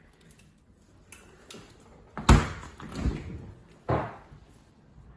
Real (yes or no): yes